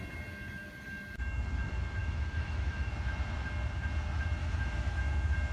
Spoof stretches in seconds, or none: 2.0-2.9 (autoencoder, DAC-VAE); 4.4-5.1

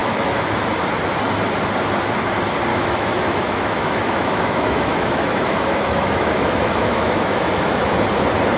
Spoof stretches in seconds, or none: 0.0-0.6 (autoencoder, DAC-VAE); 2.7-7.9